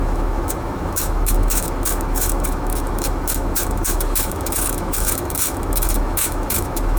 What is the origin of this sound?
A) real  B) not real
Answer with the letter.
B